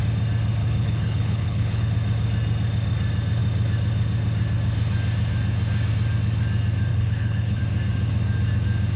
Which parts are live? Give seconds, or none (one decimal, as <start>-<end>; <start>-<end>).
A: 0.0-0.6; 1.8-6.9; 7.6-9.0